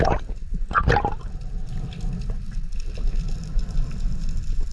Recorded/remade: recorded